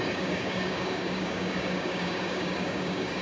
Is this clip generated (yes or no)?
yes